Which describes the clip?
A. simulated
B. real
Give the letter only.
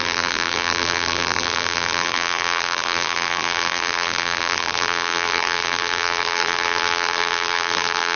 A